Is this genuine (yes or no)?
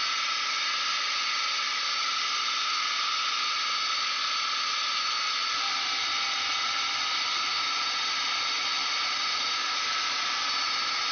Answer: yes